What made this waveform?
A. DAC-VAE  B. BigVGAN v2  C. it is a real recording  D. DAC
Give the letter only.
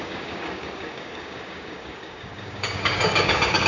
D